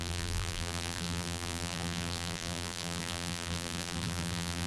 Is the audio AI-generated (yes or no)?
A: yes